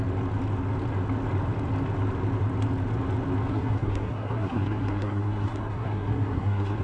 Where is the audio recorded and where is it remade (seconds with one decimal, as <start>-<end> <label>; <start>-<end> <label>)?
0.0-3.5 recorded; 3.5-6.8 remade